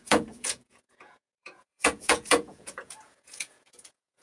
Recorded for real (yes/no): no